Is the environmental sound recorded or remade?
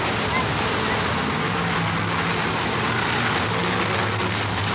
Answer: recorded